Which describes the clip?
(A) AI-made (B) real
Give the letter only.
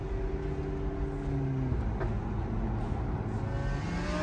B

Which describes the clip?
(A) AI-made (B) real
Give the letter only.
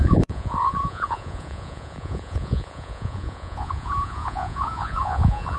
A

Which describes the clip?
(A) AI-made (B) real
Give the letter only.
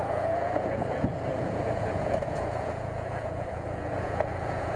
A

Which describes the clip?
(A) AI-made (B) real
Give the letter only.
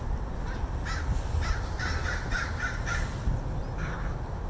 B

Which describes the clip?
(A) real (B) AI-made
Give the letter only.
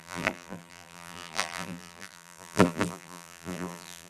B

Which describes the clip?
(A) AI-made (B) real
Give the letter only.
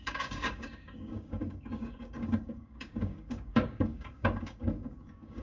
A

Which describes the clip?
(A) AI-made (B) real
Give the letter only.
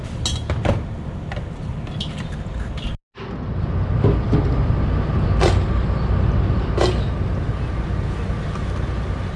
B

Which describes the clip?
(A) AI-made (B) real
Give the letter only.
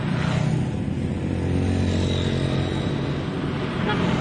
B